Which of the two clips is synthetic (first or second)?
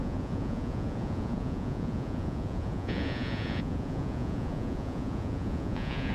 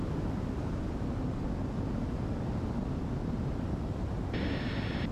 first